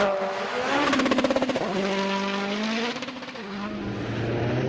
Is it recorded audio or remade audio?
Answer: recorded